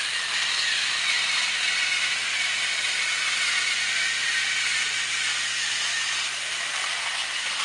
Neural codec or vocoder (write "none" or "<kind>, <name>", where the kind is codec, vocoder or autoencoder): none